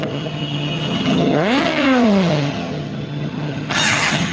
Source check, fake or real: fake